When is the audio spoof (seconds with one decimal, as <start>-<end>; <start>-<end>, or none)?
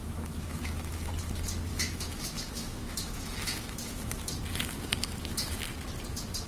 0.0-1.1; 1.7-4.3